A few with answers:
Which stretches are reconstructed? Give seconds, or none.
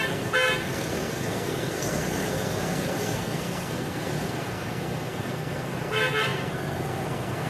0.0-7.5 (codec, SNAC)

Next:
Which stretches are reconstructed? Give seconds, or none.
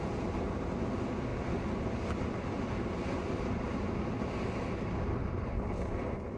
none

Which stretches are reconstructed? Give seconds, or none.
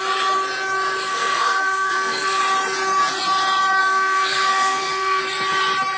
1.1-2.4 (codec, SNAC); 3.8-5.2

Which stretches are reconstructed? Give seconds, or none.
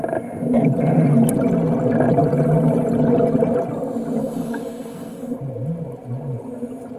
4.2-5.4 (codec, SNAC)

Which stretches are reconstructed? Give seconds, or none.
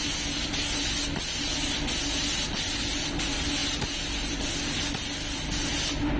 3.6-4.4 (vocoder, BigVGAN v2)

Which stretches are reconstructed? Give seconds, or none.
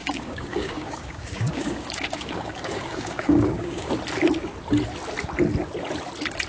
0.0-3.9 (codec, DAC)